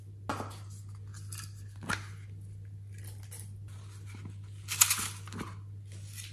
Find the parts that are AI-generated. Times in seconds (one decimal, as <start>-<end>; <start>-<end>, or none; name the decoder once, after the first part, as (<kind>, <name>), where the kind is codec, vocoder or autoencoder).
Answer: none